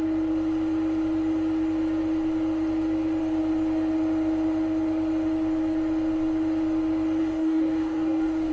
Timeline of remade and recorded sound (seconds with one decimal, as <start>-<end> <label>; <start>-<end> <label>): 0.0-7.2 recorded; 7.2-8.5 remade